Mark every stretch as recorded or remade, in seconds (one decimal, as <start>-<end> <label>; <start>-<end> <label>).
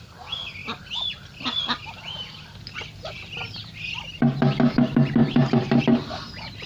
0.0-5.2 recorded; 5.2-5.8 remade; 5.8-6.7 recorded